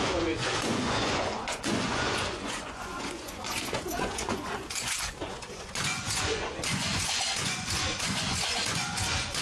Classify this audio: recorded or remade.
remade